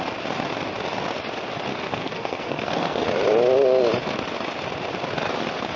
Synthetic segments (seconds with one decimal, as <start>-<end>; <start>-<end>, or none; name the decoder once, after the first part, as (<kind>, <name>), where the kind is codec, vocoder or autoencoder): 1.7-3.0 (codec, SNAC)